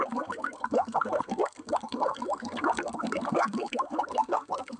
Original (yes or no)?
no